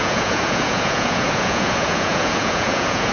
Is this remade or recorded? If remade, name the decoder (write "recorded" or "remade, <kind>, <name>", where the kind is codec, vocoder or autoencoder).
remade, vocoder, Vocos